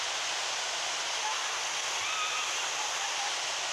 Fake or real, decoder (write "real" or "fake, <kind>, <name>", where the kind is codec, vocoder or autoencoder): real